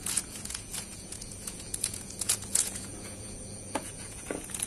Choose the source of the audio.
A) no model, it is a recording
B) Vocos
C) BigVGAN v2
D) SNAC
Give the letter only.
B